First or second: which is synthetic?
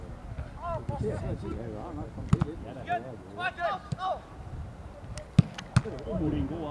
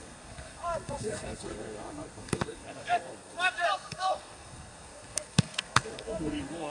second